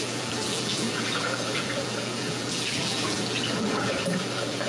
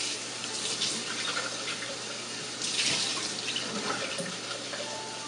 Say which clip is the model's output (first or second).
first